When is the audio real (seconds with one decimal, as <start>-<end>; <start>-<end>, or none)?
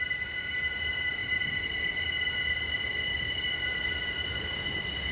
0.0-5.1